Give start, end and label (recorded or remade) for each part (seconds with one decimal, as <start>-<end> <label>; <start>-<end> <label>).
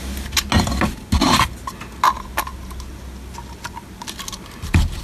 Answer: 0.0-5.0 recorded